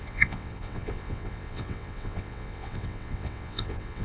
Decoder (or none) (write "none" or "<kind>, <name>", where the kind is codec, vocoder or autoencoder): vocoder, WaveNeXt